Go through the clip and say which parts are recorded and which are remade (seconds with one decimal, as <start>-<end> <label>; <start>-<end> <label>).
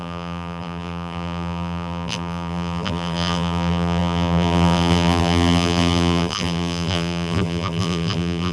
0.0-8.5 remade